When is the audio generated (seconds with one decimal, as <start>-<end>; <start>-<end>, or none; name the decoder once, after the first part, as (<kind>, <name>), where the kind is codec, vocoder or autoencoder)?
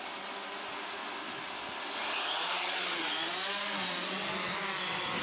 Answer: none